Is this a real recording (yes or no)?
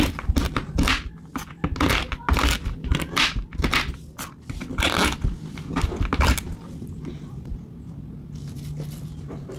yes